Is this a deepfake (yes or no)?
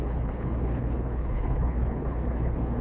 yes